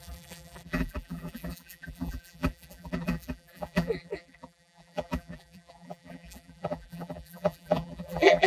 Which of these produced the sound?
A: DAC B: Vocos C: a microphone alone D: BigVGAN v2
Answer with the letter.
D